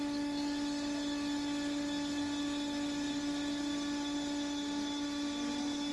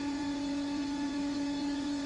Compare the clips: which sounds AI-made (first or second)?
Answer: second